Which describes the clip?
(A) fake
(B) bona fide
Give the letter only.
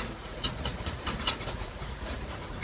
A